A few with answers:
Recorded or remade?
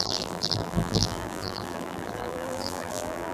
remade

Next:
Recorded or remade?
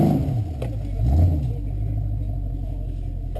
recorded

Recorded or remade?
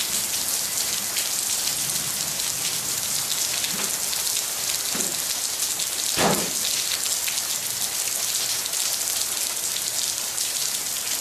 recorded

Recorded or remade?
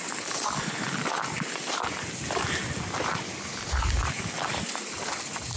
recorded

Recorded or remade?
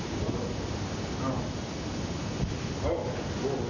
recorded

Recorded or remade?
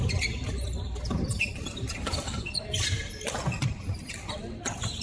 remade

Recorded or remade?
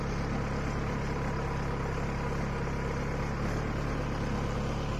recorded